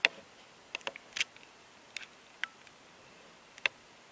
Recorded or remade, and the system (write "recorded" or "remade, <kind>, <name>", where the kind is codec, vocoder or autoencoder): recorded